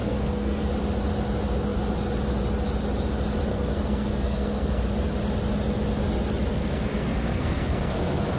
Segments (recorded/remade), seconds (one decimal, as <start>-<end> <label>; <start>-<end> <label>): 0.0-0.6 remade; 0.6-3.5 recorded; 3.5-4.8 remade; 4.8-6.5 recorded; 6.5-8.4 remade